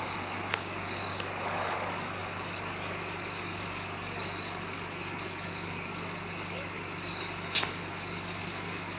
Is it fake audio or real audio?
fake